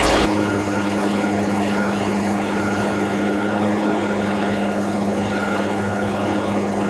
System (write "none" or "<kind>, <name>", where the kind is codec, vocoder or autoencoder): codec, HILCodec